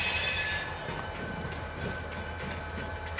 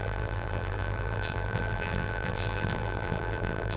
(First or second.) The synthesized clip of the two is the second